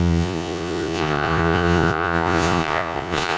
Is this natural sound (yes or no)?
no